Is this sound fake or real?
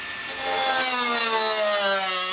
real